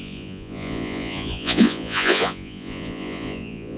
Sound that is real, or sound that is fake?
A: fake